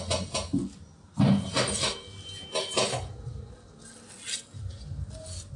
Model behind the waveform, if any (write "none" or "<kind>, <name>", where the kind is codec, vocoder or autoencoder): none